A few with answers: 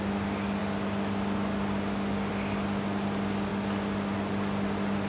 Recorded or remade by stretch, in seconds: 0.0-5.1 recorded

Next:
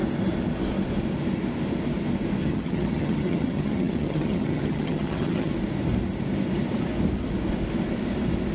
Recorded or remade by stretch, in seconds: 0.0-2.4 recorded; 2.4-5.5 remade; 5.5-8.5 recorded

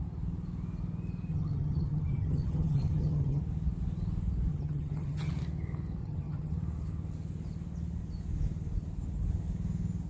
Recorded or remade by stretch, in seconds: 0.0-1.3 recorded; 1.3-3.4 remade; 3.4-4.5 recorded; 4.5-5.3 remade; 5.3-6.0 recorded; 6.0-6.5 remade; 6.5-10.1 recorded

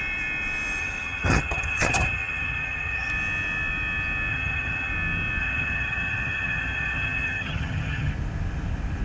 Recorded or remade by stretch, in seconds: 0.0-0.8 recorded; 0.8-3.1 remade; 3.1-4.3 recorded; 4.3-4.9 remade; 4.9-5.4 recorded; 5.4-8.1 remade; 8.1-9.0 recorded

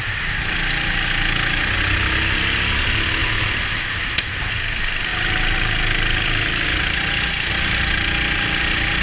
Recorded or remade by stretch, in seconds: 0.0-9.0 recorded

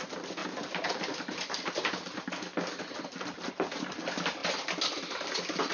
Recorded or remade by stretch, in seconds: 0.0-5.7 recorded